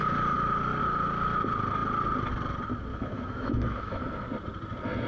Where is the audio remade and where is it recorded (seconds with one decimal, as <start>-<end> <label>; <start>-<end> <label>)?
0.0-2.9 recorded; 2.9-4.0 remade; 4.0-5.1 recorded